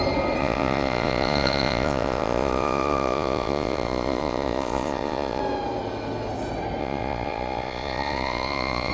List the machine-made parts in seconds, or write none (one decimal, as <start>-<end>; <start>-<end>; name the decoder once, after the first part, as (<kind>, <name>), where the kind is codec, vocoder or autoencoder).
0.4-5.4 (vocoder, Vocos); 6.8-8.9